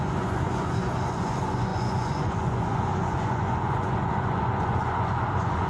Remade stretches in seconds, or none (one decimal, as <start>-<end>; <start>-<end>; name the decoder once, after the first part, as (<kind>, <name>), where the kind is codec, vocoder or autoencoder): 0.0-5.7 (vocoder, Vocos)